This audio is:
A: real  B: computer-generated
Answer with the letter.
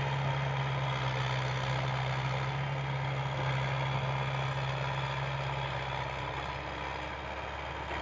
A